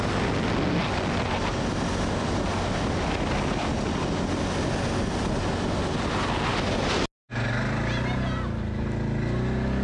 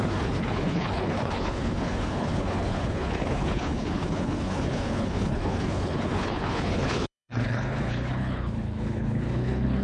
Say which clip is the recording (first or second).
first